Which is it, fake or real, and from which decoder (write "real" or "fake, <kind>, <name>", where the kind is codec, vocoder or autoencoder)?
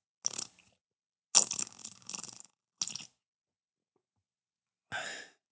real